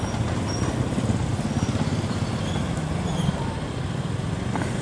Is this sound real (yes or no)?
yes